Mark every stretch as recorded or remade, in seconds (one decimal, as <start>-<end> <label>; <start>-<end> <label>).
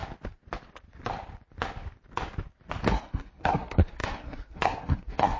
0.0-2.9 recorded; 2.9-5.4 remade